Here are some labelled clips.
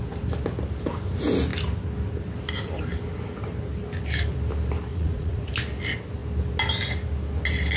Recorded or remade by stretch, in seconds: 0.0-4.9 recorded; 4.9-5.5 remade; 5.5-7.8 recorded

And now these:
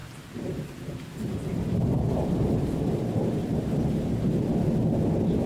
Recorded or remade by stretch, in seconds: 0.0-1.5 recorded; 1.5-3.8 remade; 3.8-5.5 recorded

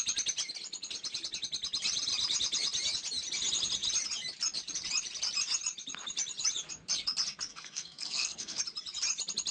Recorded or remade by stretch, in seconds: 0.0-7.5 recorded; 7.5-8.6 remade; 8.6-9.5 recorded